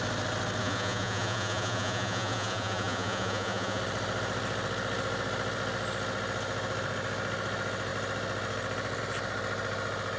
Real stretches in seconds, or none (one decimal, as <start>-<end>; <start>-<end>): 0.0-0.6; 3.8-10.2